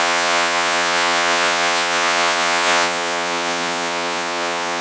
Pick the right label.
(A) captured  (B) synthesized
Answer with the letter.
B